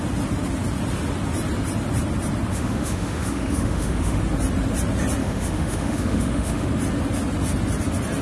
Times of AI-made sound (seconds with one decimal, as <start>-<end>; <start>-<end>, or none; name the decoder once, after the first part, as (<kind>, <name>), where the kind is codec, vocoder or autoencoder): 2.5-4.2 (autoencoder, DAC-VAE); 5.2-6.7